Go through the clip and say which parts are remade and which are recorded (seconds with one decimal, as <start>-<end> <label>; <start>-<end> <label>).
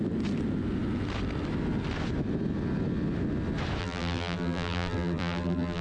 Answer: 0.0-3.8 recorded; 3.8-5.8 remade